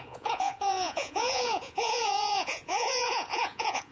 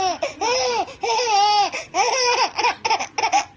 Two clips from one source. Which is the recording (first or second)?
second